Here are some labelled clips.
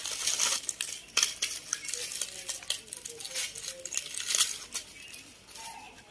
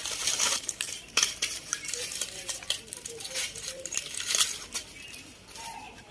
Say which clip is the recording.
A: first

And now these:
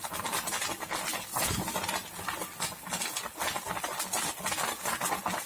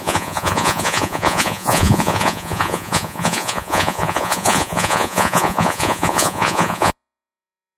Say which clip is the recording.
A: first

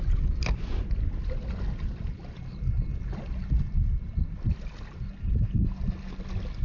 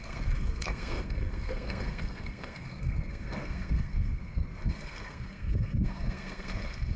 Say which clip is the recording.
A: first